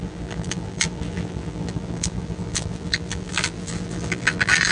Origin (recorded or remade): remade